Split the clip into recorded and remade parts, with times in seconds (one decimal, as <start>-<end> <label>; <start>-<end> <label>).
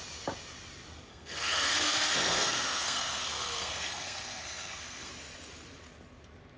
0.0-1.1 recorded; 1.1-5.1 remade; 5.1-6.6 recorded